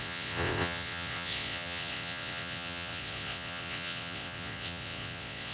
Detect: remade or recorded remade